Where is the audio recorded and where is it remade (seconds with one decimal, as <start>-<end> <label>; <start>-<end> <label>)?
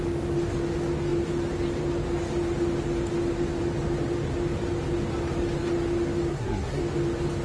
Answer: 0.0-6.3 recorded; 6.3-6.8 remade; 6.8-7.4 recorded